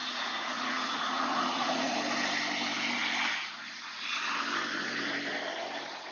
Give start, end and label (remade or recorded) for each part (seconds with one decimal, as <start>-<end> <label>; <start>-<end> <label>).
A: 0.0-1.9 remade; 1.9-6.1 recorded